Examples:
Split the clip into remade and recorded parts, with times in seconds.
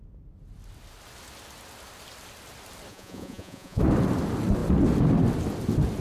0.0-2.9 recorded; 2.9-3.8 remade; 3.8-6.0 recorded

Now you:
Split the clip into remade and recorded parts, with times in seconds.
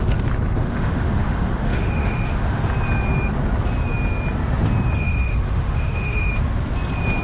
0.0-0.6 recorded; 0.6-2.6 remade; 2.6-5.0 recorded; 5.0-6.3 remade; 6.3-7.2 recorded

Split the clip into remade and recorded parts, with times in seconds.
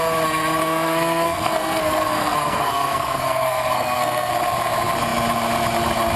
0.0-0.6 recorded; 0.6-4.3 remade; 4.3-6.2 recorded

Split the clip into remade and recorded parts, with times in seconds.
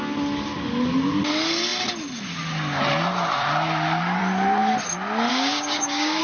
0.0-5.3 recorded; 5.3-6.2 remade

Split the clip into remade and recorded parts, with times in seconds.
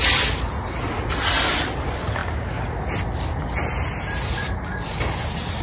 0.0-5.6 recorded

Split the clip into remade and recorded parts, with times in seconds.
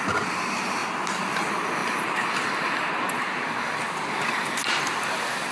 0.0-1.8 recorded; 1.8-4.8 remade; 4.8-5.5 recorded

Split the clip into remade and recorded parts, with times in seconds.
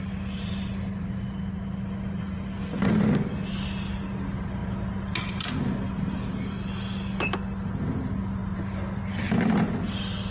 0.0-10.3 recorded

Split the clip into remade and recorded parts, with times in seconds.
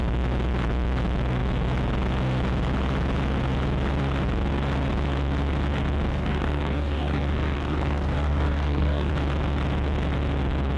0.0-6.1 recorded; 6.1-9.1 remade; 9.1-10.8 recorded